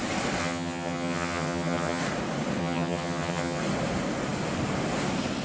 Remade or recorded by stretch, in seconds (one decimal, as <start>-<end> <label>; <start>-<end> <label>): 0.0-0.4 recorded; 0.4-2.0 remade; 2.0-2.6 recorded; 2.6-3.6 remade; 3.6-5.4 recorded